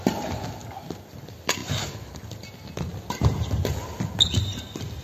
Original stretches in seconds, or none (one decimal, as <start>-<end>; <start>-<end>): 0.0-5.0